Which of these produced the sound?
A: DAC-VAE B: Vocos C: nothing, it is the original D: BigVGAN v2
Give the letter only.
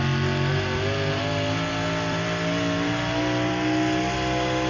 C